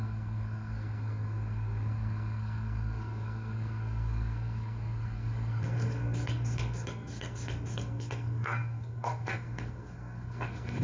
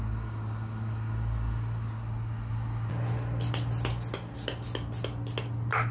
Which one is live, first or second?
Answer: second